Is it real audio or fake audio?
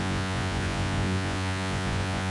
fake